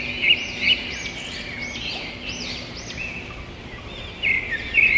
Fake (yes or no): no